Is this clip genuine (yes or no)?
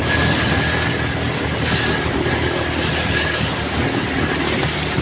yes